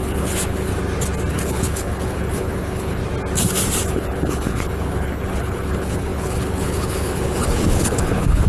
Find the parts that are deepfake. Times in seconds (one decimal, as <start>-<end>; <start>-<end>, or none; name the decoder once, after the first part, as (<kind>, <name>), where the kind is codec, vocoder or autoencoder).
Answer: 0.0-0.7 (codec, HILCodec); 1.3-3.0; 3.9-8.5